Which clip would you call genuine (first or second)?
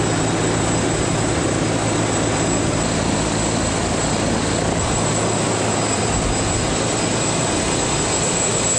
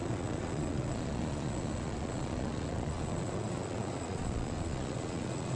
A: first